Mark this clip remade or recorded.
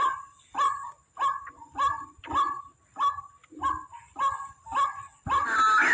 recorded